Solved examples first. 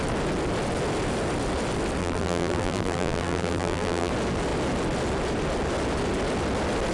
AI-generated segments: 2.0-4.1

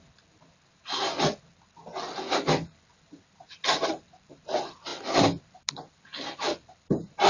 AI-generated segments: none

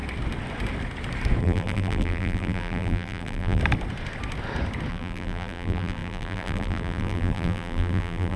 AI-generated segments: 1.4-3.6; 4.9-8.4

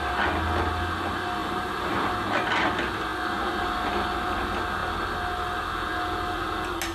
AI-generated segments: 1.4-2.2